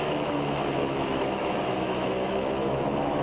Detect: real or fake fake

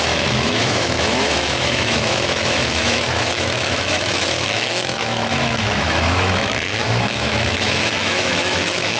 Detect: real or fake fake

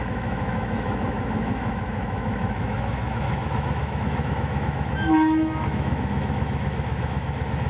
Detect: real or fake fake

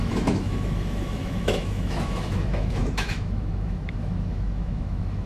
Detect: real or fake fake